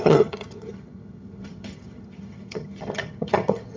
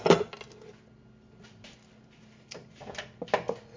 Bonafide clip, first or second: second